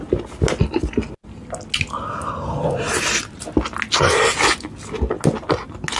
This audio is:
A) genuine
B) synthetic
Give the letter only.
A